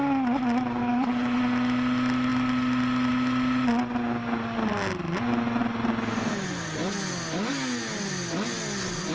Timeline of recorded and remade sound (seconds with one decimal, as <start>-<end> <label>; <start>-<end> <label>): 0.0-0.8 recorded; 0.8-1.4 remade; 1.4-9.1 recorded